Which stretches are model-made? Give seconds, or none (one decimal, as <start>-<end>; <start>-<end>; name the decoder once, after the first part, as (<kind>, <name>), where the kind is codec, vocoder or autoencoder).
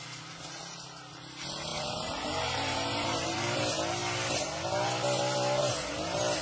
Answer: 1.7-3.6 (vocoder, BigVGAN v2)